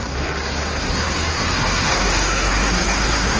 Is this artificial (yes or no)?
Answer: yes